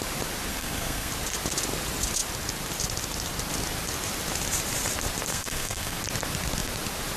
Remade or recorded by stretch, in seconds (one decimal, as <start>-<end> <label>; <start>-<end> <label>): 0.0-0.5 recorded; 0.5-1.1 remade; 1.1-5.3 recorded; 5.3-6.0 remade; 6.0-7.2 recorded